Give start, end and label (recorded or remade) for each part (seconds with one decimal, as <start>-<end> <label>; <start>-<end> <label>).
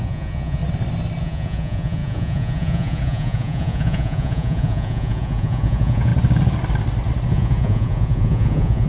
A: 0.0-0.6 remade; 0.6-1.2 recorded; 1.2-6.1 remade; 6.1-7.3 recorded; 7.3-8.9 remade